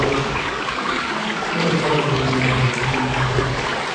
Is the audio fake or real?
fake